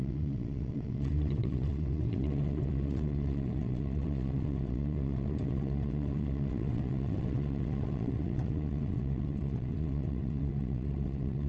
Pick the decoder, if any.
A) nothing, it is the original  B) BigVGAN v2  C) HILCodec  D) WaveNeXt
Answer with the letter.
D